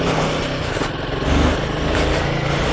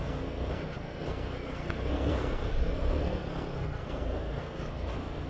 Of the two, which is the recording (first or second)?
first